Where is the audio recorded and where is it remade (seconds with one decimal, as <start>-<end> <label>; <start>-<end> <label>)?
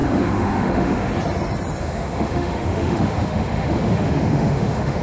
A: 0.0-1.1 remade; 1.1-1.8 recorded; 1.8-5.0 remade